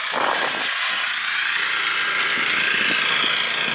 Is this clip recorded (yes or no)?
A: yes